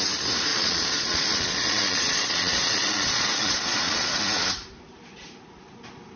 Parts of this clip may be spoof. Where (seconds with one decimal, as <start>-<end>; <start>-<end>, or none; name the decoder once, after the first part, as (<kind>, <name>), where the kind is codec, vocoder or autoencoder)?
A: 0.5-4.2 (vocoder, Vocos)